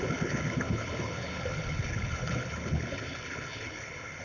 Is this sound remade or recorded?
remade